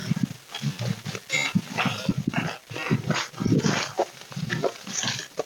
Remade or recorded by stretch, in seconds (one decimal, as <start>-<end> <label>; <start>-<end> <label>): 0.0-2.1 recorded; 2.1-5.5 remade